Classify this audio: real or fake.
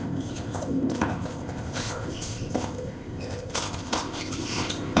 fake